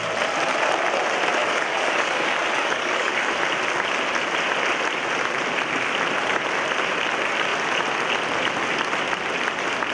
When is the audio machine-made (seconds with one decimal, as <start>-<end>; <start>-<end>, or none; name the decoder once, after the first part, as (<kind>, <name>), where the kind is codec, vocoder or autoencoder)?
1.4-3.3 (codec, DAC)